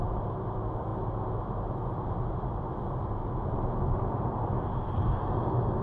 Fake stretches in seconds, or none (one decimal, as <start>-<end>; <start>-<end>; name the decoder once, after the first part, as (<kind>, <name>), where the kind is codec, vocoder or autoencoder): none